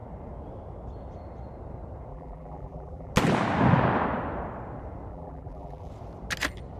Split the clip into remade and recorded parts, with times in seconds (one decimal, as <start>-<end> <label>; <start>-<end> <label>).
0.0-2.1 recorded; 2.1-3.1 remade; 3.1-5.1 recorded; 5.1-5.9 remade; 5.9-6.8 recorded